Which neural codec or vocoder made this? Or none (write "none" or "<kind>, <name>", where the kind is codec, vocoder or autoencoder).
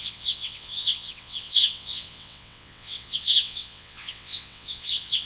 vocoder, WaveNeXt